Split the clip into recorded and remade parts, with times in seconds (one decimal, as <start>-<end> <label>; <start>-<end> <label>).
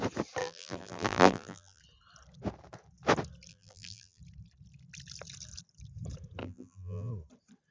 0.0-0.4 recorded; 0.4-1.8 remade; 1.8-3.5 recorded; 3.5-4.2 remade; 4.2-6.4 recorded; 6.4-7.1 remade; 7.1-7.7 recorded